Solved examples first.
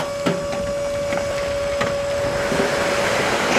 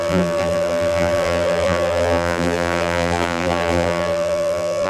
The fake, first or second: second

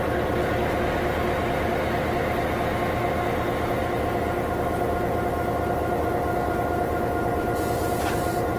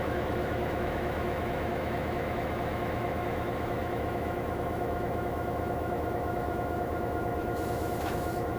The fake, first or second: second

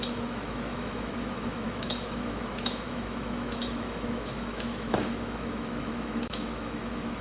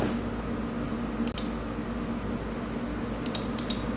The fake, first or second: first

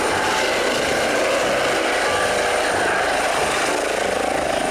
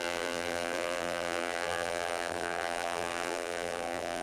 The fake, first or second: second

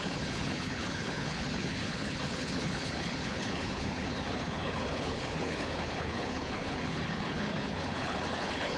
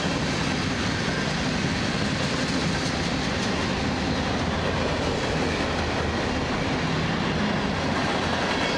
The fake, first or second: first